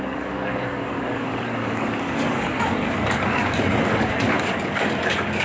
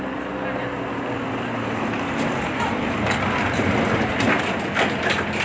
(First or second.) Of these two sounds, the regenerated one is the first